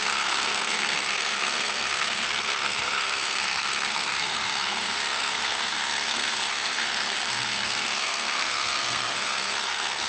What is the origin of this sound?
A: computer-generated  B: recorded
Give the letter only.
A